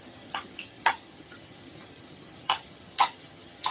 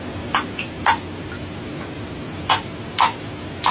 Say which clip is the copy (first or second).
first